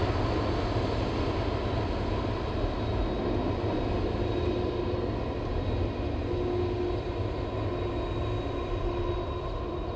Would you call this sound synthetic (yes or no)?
no